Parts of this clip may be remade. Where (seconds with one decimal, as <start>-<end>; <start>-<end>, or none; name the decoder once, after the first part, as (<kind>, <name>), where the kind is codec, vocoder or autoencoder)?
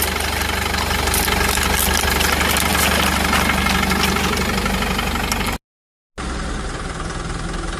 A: none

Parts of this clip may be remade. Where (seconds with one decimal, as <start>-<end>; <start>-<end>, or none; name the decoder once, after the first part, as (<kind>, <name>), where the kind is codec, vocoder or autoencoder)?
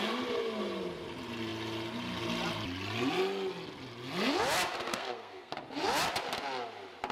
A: 4.9-5.5 (codec, SNAC)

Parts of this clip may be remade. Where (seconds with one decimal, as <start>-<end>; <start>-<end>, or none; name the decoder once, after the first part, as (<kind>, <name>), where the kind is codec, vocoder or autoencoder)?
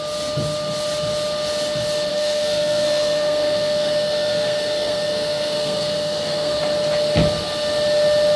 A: 2.1-6.6 (codec, SNAC)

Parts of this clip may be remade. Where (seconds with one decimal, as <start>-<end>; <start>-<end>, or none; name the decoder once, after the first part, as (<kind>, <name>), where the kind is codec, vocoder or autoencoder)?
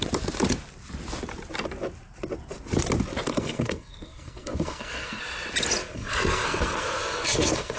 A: 3.3-5.2 (codec, SNAC); 5.8-7.8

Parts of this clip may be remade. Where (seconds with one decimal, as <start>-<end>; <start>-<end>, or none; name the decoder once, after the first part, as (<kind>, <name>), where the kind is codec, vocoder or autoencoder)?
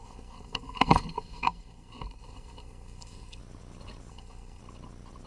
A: 0.0-3.4 (codec, SNAC); 4.1-4.6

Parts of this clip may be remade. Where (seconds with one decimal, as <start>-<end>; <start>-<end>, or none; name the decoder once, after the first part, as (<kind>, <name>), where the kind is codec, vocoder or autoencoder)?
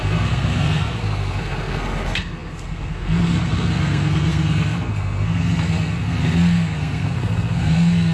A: 0.0-8.1 (codec, SNAC)